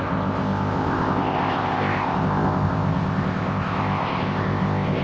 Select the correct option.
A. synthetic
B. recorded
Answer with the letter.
A